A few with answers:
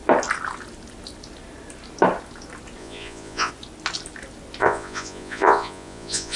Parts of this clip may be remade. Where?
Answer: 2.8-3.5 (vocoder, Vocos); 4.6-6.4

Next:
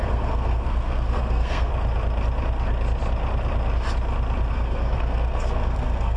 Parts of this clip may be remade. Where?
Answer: 0.0-1.7 (codec, SNAC); 4.5-6.2

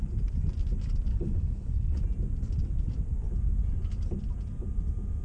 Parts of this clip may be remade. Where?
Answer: 1.1-2.0 (codec, HILCodec)

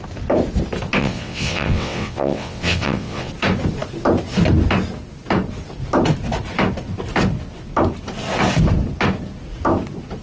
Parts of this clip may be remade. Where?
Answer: 1.0-3.3 (vocoder, WaveNeXt)

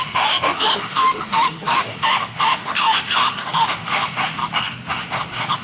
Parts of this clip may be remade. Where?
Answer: 0.0-4.4 (autoencoder, DAC-VAE); 4.9-5.6